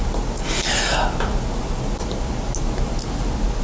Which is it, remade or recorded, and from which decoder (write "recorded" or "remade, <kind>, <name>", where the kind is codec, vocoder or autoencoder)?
recorded